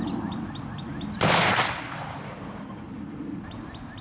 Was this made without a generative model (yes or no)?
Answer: no